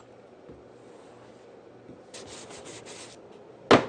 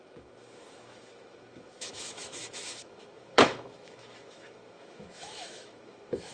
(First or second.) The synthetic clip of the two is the second